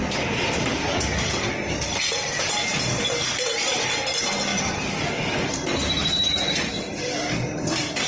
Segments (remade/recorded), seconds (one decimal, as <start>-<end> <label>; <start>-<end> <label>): 0.0-8.1 recorded